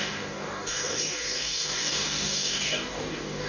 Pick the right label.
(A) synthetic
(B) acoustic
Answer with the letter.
A